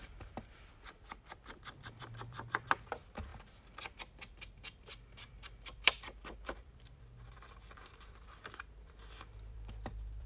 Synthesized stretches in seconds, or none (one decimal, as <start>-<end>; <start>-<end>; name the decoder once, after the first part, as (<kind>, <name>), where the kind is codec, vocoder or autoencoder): 0.0-3.3 (vocoder, BigVGAN v2); 4.0-10.3